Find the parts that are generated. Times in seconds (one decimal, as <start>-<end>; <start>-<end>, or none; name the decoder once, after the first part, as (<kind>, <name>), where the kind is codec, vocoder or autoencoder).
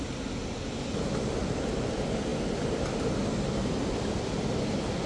none